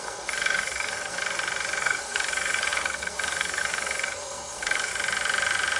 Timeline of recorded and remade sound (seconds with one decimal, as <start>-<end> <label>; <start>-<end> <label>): 0.0-1.2 remade; 1.2-1.8 recorded; 1.8-4.9 remade; 4.9-5.8 recorded